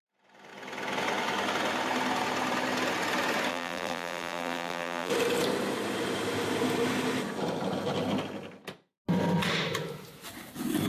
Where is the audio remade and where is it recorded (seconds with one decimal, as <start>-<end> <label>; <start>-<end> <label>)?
0.0-3.5 recorded; 3.5-5.1 remade; 5.1-10.9 recorded